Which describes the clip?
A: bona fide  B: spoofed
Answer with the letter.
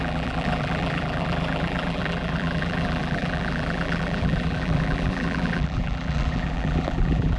B